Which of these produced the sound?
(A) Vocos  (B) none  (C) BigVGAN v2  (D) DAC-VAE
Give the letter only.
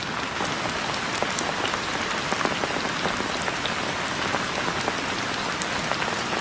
B